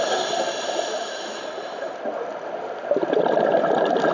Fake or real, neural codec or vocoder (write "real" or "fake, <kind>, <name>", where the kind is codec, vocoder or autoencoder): real